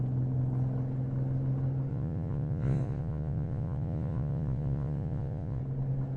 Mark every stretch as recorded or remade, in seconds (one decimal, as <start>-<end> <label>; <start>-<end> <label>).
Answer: 0.0-1.9 recorded; 1.9-5.6 remade; 5.6-6.2 recorded

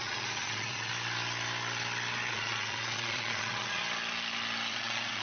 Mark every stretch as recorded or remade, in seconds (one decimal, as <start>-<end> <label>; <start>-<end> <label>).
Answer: 0.0-0.9 remade; 0.9-2.3 recorded; 2.3-3.8 remade; 3.8-4.7 recorded; 4.7-5.2 remade

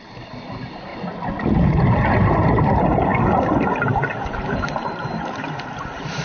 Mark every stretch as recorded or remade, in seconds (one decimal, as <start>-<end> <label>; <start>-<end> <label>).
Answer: 0.0-0.9 remade; 0.9-2.6 recorded; 2.6-3.1 remade; 3.1-4.3 recorded; 4.3-6.2 remade

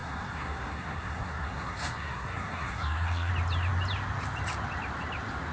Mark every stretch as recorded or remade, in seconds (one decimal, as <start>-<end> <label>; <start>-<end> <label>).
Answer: 0.0-3.3 remade; 3.3-5.5 recorded

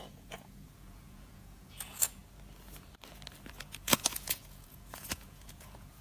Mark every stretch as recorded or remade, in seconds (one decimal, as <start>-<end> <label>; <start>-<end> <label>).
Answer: 0.0-2.2 remade; 2.2-3.5 recorded; 3.5-6.0 remade

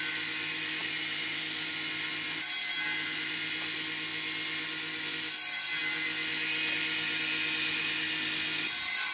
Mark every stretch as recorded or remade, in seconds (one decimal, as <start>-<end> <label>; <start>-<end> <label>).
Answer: 0.0-9.1 recorded

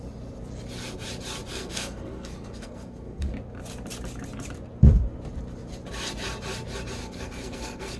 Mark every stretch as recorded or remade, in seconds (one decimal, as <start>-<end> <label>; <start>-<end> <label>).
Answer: 0.0-1.5 recorded; 1.5-3.3 remade; 3.3-7.0 recorded; 7.0-8.0 remade